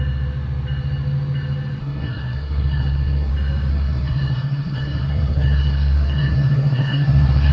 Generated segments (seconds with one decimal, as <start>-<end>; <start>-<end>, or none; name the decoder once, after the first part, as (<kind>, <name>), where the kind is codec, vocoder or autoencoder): 1.8-3.3 (codec, SNAC); 3.7-7.5